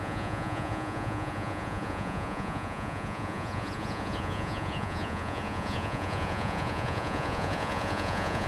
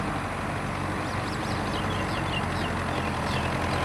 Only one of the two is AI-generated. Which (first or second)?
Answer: first